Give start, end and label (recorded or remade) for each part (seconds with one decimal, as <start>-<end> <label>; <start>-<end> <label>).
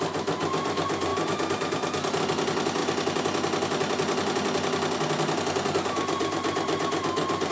0.0-7.5 recorded